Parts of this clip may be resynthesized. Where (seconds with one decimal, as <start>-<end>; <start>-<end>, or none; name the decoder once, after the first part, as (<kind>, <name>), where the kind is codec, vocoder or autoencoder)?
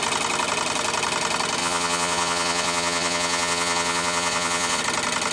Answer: 1.6-4.8 (vocoder, Vocos)